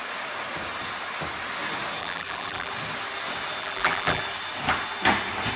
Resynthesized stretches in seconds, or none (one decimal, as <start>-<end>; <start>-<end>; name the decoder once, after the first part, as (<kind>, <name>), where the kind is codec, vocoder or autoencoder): 2.0-2.7 (vocoder, BigVGAN v2); 3.6-4.2